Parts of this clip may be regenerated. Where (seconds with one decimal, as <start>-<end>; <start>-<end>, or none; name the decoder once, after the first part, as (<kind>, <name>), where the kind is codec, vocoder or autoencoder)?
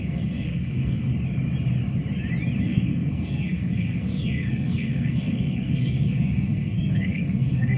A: 0.0-1.1 (codec, SNAC); 2.6-7.8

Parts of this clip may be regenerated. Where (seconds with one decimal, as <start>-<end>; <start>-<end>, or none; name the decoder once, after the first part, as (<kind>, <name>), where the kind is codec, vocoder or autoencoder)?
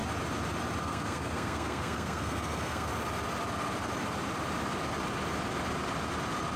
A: 0.8-2.9 (codec, SNAC)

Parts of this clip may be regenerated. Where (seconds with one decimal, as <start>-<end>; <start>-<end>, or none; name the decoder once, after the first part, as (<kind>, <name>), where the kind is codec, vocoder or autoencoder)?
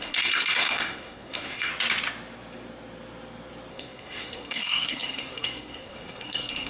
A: 0.0-1.7 (codec, SNAC); 3.7-6.7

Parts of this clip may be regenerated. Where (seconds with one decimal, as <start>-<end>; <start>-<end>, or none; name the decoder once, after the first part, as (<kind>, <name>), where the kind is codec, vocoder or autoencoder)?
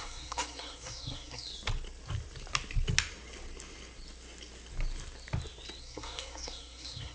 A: 0.0-1.5 (codec, SNAC); 5.8-7.1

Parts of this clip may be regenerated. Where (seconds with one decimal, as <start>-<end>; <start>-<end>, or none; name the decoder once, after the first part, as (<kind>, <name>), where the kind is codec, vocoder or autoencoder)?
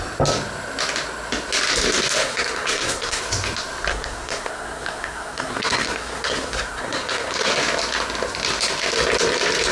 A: 2.2-3.2 (codec, SNAC); 3.9-7.5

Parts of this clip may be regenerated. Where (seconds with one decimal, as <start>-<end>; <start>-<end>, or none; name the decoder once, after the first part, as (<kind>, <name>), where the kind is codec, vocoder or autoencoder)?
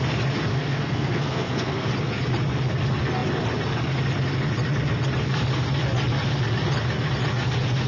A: 0.5-1.9 (codec, SNAC)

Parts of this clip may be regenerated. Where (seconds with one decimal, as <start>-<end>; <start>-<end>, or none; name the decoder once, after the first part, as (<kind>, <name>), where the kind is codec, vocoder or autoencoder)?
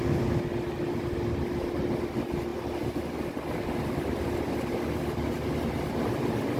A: none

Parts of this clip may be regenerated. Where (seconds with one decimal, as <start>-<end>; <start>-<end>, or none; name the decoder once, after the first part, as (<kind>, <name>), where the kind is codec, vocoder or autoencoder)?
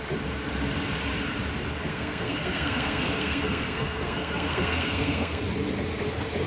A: 1.9-5.4 (codec, SNAC)